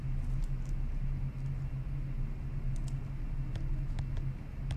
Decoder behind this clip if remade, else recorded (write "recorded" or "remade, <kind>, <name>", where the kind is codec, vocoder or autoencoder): recorded